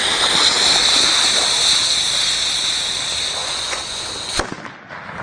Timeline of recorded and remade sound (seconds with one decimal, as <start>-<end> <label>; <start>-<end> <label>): 0.0-3.4 recorded; 3.4-4.1 remade; 4.1-5.2 recorded